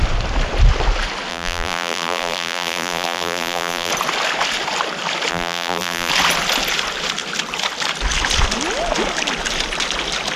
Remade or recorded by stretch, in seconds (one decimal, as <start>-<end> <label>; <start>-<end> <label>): 0.0-1.3 recorded; 1.3-3.9 remade; 3.9-5.3 recorded; 5.3-6.1 remade; 6.1-10.4 recorded